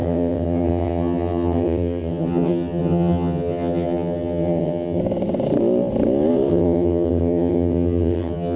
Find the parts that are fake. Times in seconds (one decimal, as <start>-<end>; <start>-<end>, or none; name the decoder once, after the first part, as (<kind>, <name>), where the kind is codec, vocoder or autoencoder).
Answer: 0.0-5.0 (vocoder, HiFi-GAN); 6.5-8.6